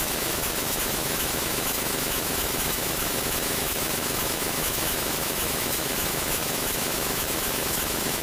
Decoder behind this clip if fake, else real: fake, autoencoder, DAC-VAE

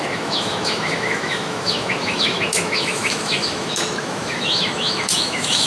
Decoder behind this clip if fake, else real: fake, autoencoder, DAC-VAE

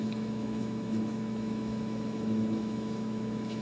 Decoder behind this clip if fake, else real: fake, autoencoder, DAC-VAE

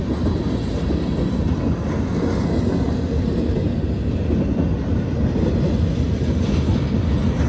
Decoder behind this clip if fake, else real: real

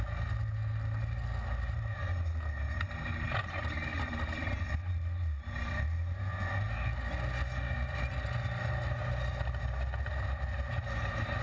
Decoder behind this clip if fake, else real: real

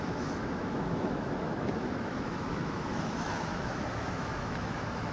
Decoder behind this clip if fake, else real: fake, autoencoder, DAC-VAE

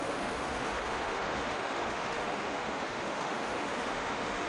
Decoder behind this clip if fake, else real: fake, autoencoder, DAC-VAE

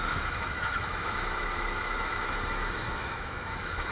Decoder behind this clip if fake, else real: fake, autoencoder, DAC-VAE